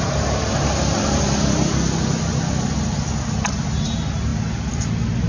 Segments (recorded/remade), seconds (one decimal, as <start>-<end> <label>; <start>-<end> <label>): 0.0-5.3 recorded